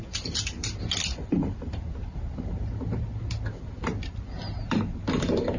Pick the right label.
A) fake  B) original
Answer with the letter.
B